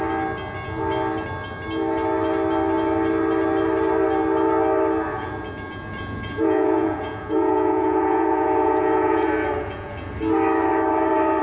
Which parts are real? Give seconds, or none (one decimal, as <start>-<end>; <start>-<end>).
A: 0.0-5.1; 10.1-11.4